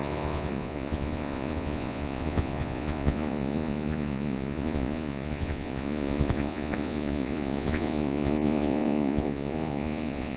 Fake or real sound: fake